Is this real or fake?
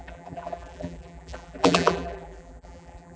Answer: fake